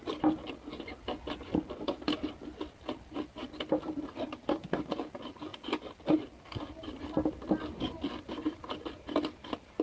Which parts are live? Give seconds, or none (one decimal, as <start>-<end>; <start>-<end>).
0.0-9.8